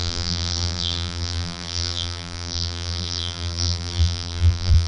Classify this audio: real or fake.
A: fake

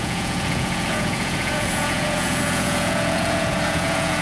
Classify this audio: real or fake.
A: fake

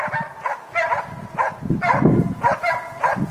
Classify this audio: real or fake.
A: real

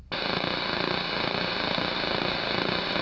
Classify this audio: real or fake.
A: real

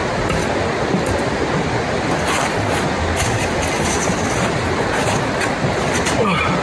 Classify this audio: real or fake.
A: real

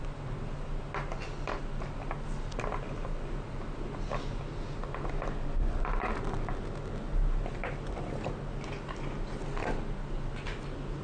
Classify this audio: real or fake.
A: real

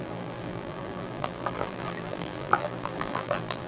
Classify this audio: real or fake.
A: fake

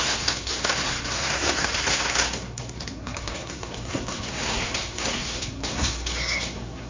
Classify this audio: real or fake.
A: fake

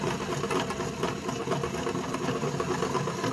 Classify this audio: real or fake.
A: real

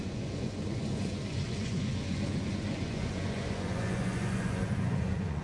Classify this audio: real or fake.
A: fake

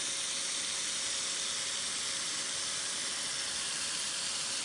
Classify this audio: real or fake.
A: real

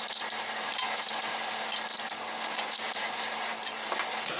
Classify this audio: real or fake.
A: real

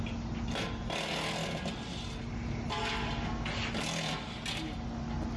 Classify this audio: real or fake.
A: real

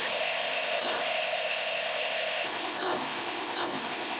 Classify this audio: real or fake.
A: fake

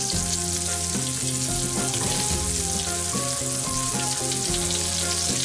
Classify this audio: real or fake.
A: real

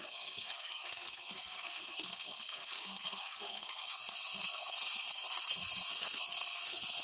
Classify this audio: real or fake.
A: fake